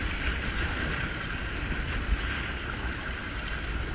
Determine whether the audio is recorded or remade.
recorded